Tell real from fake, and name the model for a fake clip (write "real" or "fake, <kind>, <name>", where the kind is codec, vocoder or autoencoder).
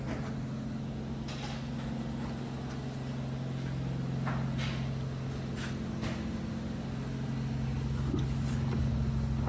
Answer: real